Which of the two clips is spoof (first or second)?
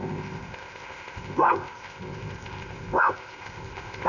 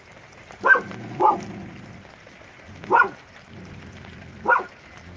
first